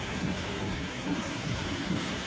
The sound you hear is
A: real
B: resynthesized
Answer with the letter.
B